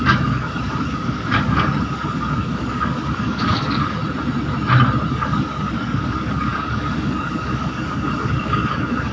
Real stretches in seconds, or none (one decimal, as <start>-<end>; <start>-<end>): 4.0-5.1